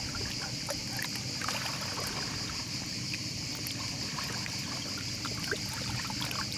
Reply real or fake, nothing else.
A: real